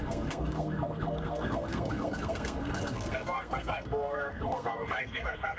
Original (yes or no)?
no